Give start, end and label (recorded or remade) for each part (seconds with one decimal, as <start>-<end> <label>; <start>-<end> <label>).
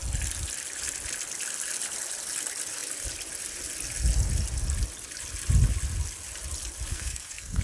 0.0-6.9 recorded; 6.9-7.6 remade